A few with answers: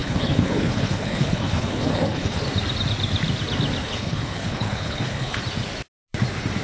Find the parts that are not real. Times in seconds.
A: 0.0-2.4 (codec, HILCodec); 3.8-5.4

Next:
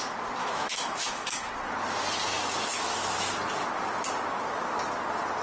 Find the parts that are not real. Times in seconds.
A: 0.4-1.5 (autoencoder, DAC-VAE); 2.7-3.3

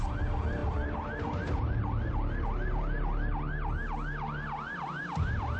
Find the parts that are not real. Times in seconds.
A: none

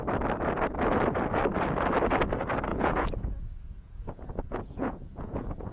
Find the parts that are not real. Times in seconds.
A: 2.7-5.7 (vocoder, Vocos)